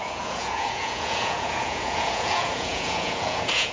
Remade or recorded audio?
remade